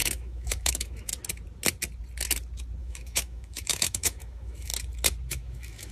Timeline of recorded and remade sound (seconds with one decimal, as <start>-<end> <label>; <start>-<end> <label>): 0.0-1.1 remade; 1.1-2.8 recorded; 2.8-4.7 remade; 4.7-5.3 recorded; 5.3-5.9 remade